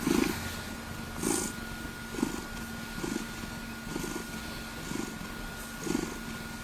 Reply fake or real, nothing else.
real